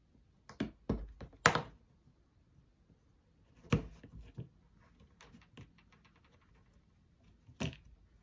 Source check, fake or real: real